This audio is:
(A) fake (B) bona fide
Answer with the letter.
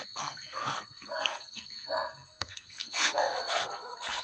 A